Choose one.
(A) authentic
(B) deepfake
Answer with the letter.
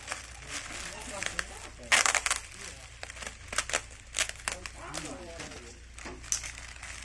A